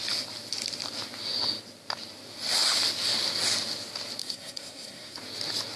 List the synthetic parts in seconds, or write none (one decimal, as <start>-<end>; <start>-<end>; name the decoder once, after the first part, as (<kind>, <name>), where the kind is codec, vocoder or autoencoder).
4.2-5.2 (codec, SNAC)